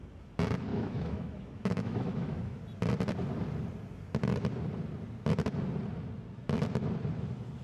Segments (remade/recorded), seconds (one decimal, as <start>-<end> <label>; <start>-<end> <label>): 0.0-0.7 recorded; 0.7-2.6 remade; 2.6-7.6 recorded